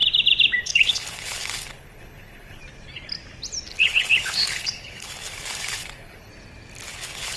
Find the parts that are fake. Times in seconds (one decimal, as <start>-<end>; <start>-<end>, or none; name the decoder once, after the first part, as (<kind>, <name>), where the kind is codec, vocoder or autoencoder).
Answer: 0.6-2.6 (codec, HILCodec); 3.7-6.3; 6.9-7.4